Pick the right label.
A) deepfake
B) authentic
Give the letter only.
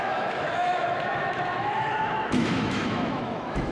A